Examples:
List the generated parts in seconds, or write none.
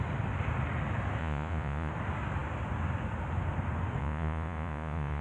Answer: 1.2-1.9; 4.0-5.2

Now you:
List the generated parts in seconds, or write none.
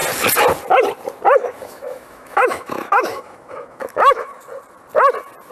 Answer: 1.4-4.4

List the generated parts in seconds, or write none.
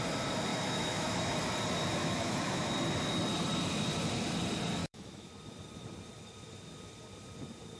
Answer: 0.5-1.5; 2.0-2.7; 4.8-5.3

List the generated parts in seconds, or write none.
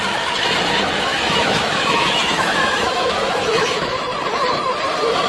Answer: 1.1-4.0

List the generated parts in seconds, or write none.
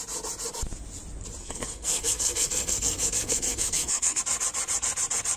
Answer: 1.4-4.2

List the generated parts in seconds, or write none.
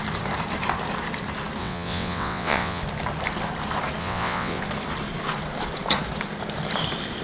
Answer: 1.6-2.8; 4.0-4.6